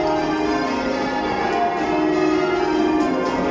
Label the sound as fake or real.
real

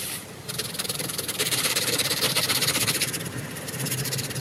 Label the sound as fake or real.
fake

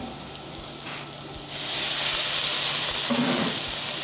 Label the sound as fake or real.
real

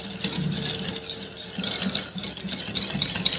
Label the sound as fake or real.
real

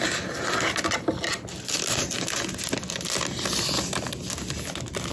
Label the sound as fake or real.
real